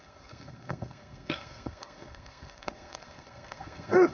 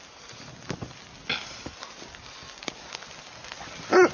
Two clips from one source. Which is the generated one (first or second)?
first